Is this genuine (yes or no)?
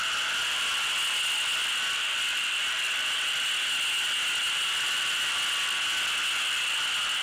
yes